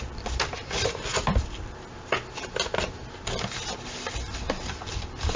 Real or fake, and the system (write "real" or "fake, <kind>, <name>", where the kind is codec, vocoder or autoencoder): real